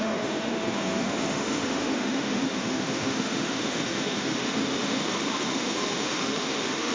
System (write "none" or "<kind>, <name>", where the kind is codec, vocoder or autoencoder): autoencoder, DAC-VAE